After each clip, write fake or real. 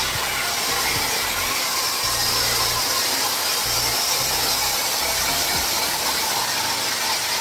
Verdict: real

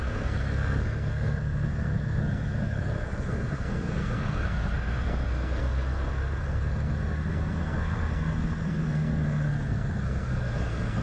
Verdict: fake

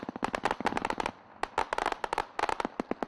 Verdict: real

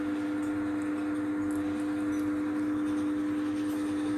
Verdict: real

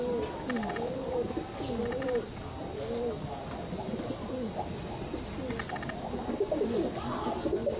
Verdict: real